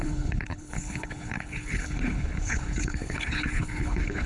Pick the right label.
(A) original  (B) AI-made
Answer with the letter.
B